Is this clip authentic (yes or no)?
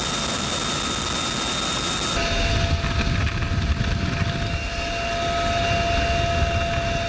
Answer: yes